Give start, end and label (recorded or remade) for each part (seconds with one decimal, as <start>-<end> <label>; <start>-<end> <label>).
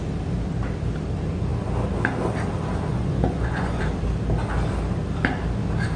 0.0-2.9 recorded; 2.9-3.8 remade; 3.8-6.0 recorded